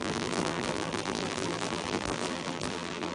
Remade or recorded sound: remade